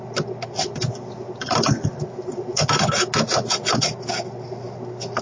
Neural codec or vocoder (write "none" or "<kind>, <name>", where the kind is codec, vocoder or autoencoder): none